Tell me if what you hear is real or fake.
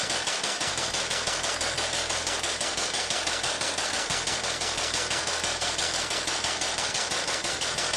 fake